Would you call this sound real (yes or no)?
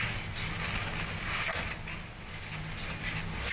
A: yes